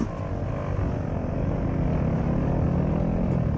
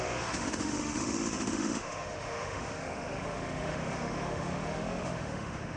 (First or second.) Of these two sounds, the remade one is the second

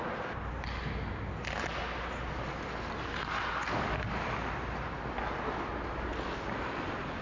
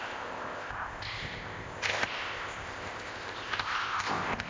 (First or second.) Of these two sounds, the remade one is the second